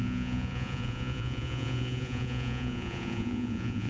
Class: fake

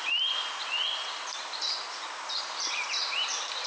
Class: fake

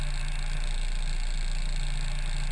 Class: real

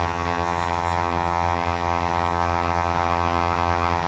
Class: fake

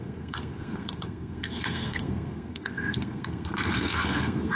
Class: fake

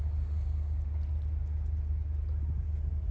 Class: real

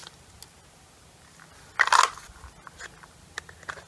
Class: real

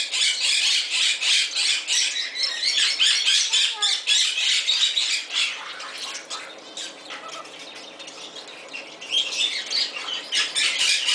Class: real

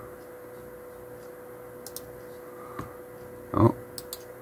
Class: real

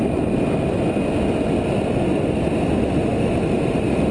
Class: real